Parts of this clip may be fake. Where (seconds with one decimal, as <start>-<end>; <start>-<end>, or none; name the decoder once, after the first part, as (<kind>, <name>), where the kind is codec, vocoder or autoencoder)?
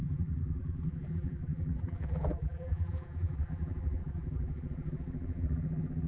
0.0-6.1 (vocoder, BigVGAN v2)